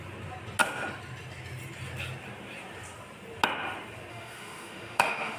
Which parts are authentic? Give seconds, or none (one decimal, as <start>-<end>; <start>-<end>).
0.0-4.1